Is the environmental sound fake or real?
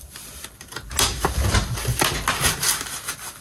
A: real